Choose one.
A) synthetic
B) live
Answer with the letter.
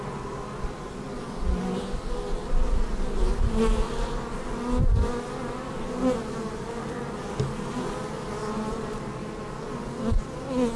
B